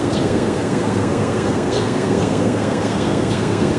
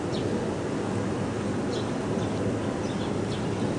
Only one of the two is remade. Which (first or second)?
first